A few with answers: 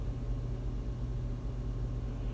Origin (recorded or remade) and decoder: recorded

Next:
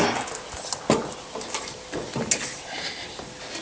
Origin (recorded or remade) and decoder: recorded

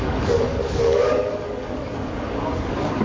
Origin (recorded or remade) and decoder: remade, codec, DAC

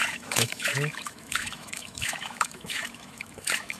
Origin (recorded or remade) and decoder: remade, autoencoder, DAC-VAE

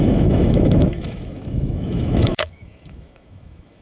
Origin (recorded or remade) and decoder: remade, autoencoder, DAC-VAE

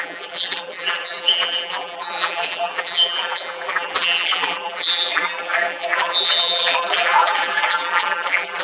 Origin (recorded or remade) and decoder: remade, vocoder, BigVGAN v2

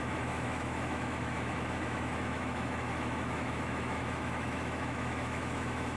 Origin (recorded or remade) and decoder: remade, autoencoder, DAC-VAE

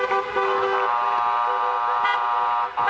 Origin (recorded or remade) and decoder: recorded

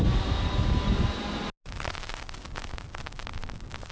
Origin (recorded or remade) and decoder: recorded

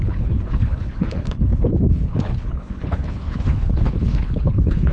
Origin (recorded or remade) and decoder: remade, codec, HILCodec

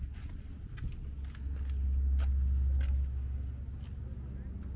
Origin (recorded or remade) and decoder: recorded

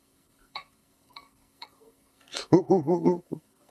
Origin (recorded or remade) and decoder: remade, codec, SNAC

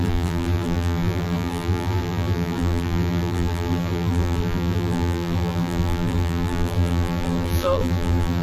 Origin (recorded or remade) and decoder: remade, vocoder, BigVGAN v2